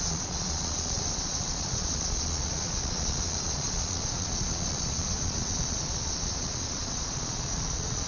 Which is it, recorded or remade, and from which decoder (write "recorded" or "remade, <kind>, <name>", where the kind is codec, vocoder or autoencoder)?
remade, vocoder, Vocos